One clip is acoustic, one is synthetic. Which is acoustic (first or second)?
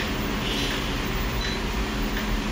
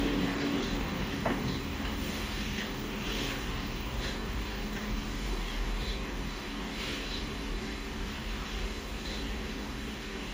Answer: first